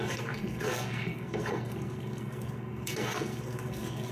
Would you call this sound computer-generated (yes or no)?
yes